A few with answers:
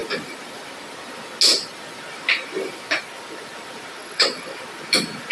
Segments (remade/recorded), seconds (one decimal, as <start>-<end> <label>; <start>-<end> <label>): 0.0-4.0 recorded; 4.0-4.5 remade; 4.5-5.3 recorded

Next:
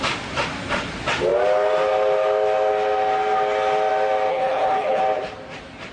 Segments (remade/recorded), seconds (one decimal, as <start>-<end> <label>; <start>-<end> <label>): 0.0-4.3 recorded; 4.3-5.0 remade; 5.0-5.9 recorded

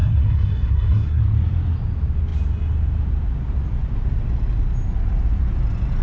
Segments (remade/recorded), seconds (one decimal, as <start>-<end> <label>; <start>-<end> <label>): 0.0-1.2 remade; 1.2-6.0 recorded

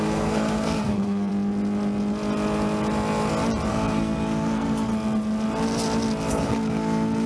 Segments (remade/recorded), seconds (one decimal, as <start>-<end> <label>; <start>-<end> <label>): 0.0-1.3 remade; 1.3-3.7 recorded; 3.7-4.9 remade; 4.9-6.3 recorded; 6.3-7.3 remade